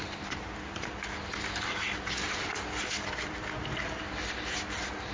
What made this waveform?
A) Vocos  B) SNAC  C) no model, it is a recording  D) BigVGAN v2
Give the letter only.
C